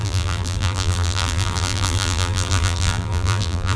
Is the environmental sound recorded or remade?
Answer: remade